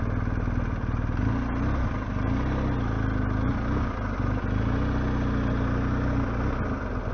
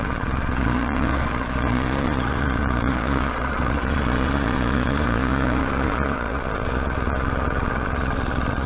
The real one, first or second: first